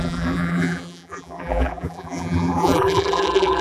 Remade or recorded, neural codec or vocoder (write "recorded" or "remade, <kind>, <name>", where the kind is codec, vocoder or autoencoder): remade, vocoder, BigVGAN v2